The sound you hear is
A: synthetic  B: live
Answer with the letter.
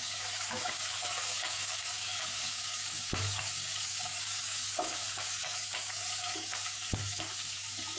A